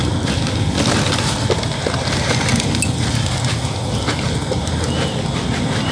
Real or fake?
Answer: real